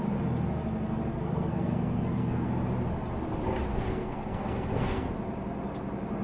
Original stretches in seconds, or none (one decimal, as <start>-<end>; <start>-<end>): 0.0-1.1; 2.5-3.7; 5.1-6.2